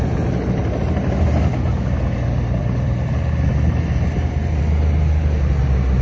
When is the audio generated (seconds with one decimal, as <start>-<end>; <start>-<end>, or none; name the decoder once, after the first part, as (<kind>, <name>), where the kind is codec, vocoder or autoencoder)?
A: 2.6-4.6 (vocoder, BigVGAN v2)